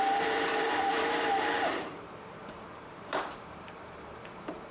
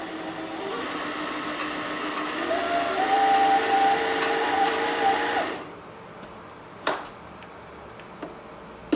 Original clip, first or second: second